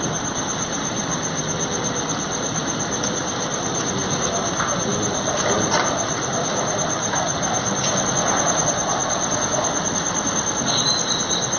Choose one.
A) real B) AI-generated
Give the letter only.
A